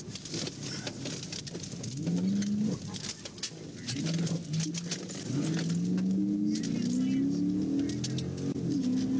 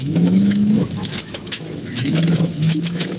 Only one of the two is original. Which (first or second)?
first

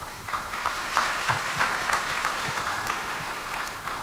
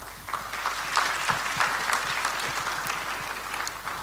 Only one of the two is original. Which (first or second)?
second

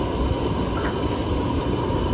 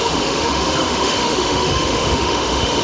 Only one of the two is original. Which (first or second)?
first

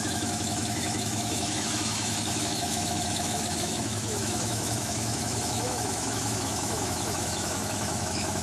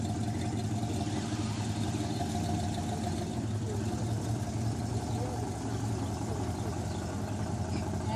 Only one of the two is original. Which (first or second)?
second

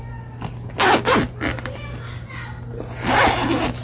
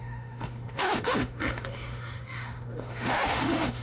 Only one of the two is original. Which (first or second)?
first